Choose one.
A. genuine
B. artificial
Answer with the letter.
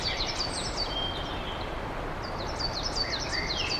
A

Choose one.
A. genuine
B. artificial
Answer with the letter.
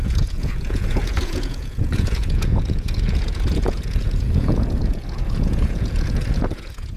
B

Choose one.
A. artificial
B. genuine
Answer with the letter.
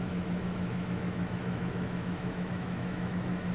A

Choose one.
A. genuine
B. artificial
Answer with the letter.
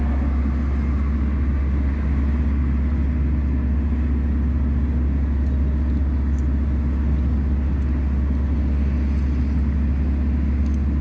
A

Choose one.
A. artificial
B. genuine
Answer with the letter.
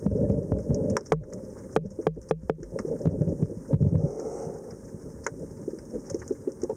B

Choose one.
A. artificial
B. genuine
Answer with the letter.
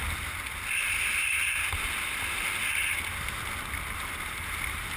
B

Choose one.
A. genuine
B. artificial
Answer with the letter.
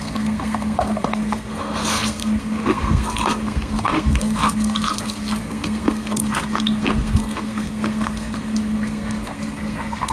B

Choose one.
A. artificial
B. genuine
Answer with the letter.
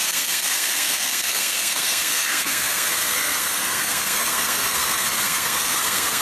A